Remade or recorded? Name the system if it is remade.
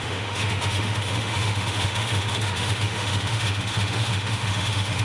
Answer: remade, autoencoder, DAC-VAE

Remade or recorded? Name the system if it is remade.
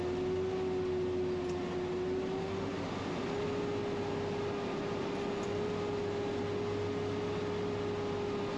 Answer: recorded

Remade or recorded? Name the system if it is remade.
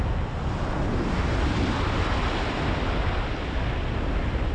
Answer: recorded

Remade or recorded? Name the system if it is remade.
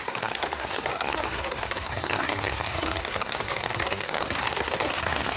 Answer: remade, codec, SNAC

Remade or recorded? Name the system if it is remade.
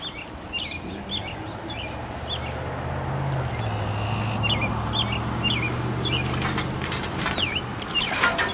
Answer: recorded